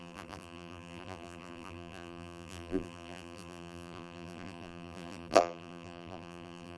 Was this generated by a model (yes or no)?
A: yes